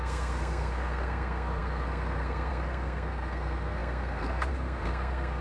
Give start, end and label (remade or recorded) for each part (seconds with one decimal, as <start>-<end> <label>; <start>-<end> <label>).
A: 0.0-5.4 remade

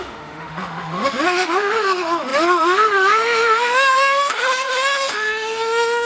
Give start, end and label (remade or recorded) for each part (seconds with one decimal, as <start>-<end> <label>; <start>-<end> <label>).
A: 0.0-6.1 remade

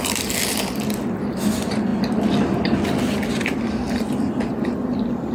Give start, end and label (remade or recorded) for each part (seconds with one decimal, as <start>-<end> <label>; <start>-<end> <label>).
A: 0.0-5.3 recorded